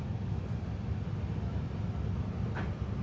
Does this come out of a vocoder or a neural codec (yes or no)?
no